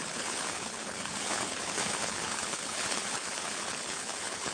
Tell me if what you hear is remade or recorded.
remade